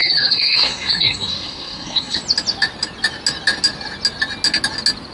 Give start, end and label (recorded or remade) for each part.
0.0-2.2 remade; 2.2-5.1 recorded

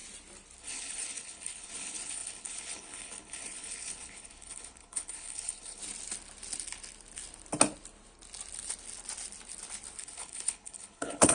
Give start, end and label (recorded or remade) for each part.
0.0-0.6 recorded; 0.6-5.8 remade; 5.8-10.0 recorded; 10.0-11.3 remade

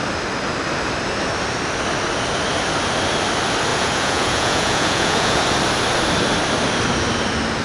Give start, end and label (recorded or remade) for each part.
0.0-3.7 recorded; 3.7-5.4 remade; 5.4-7.6 recorded

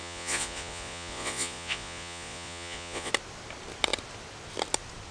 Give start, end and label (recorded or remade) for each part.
0.0-3.1 remade; 3.1-5.1 recorded

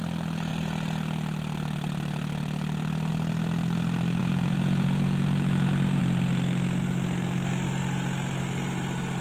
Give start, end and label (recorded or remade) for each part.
0.0-4.2 recorded; 4.2-6.0 remade; 6.0-9.2 recorded

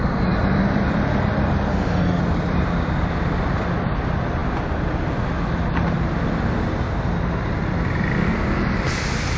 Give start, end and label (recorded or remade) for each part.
0.0-1.7 recorded; 1.7-2.2 remade; 2.2-9.4 recorded

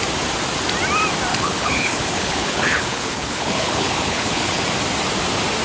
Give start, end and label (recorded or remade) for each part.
0.0-1.3 recorded; 1.3-4.6 remade; 4.6-5.6 recorded